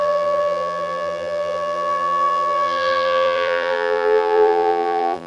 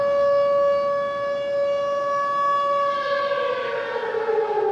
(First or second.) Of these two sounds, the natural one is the second